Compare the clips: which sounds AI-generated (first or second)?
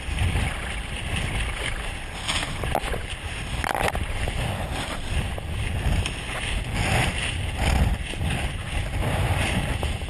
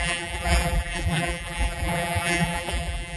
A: second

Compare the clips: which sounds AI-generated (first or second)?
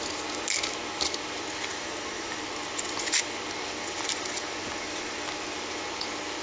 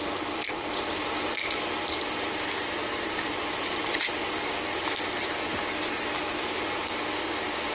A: second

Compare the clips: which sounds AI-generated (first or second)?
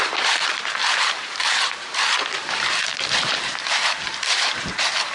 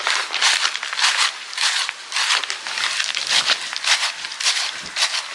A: first